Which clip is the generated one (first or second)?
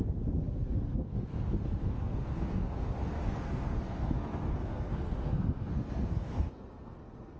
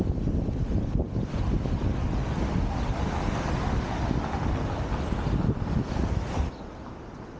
first